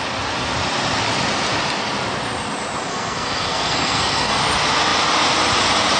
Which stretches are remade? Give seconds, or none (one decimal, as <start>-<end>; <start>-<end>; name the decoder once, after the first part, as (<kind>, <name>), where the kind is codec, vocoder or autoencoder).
2.9-4.4 (codec, SNAC)